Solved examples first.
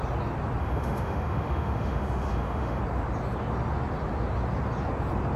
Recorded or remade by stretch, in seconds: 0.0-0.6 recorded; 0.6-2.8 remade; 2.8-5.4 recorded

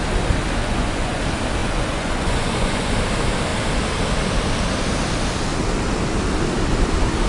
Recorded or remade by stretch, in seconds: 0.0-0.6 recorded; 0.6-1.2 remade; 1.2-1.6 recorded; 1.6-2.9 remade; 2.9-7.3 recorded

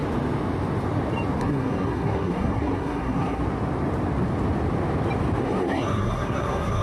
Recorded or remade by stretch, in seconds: 0.0-1.4 recorded; 1.4-3.4 remade; 3.4-5.4 recorded; 5.4-6.8 remade

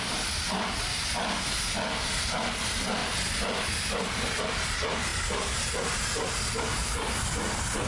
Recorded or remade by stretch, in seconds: 0.0-7.9 recorded